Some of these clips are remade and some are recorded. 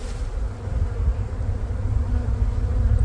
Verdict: recorded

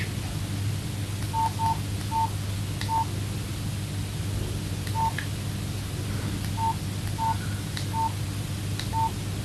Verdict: recorded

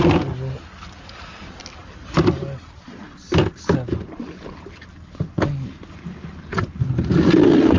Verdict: recorded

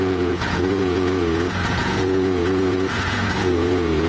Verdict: remade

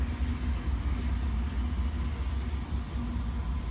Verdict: recorded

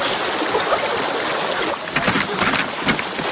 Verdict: recorded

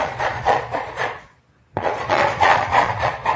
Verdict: remade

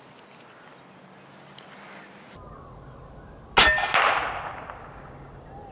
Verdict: recorded